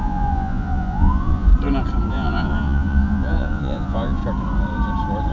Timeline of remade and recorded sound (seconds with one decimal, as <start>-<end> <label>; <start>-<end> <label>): 0.0-1.5 remade; 1.5-2.1 recorded; 2.1-4.2 remade; 4.2-5.3 recorded